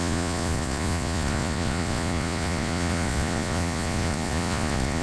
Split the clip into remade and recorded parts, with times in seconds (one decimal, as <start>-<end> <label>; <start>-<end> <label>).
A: 0.0-5.0 remade